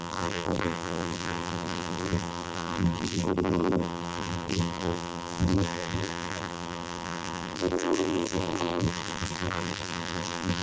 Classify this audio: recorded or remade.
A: remade